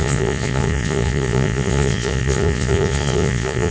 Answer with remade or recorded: remade